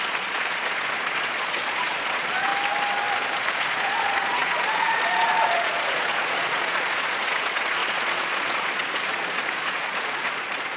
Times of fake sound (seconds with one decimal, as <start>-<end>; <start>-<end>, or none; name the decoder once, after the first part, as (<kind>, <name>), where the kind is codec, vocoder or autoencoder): 0.0-2.5 (vocoder, Vocos); 3.3-10.8